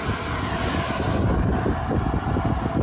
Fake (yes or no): no